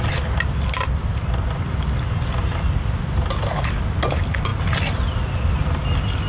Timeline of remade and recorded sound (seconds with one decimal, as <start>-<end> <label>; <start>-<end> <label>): 0.0-6.3 recorded